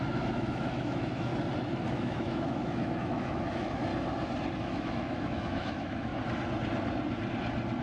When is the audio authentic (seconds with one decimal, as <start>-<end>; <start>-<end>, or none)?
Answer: 1.3-1.9; 3.9-4.6; 6.1-7.8